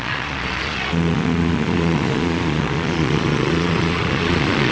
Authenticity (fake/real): fake